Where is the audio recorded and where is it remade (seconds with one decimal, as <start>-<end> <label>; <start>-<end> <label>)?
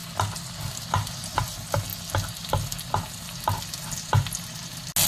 0.0-5.1 recorded